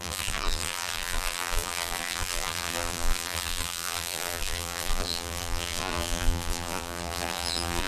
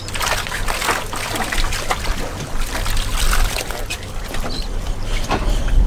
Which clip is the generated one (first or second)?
first